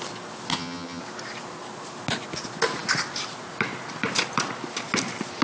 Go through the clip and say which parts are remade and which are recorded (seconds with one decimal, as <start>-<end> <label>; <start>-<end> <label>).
0.0-0.5 recorded; 0.5-1.0 remade; 1.0-5.4 recorded